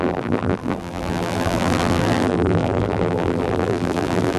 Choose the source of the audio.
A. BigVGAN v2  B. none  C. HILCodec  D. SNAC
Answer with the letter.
A